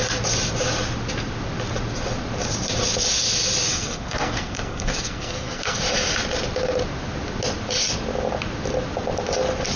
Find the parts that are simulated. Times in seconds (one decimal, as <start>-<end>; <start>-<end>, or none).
3.7-5.8